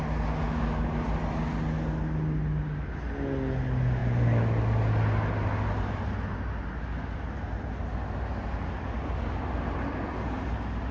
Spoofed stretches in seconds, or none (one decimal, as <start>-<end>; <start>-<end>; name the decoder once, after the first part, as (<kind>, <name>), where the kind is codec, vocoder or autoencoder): none